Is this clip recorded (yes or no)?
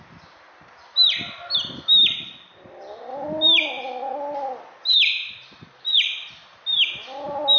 yes